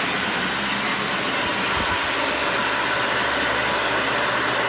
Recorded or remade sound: recorded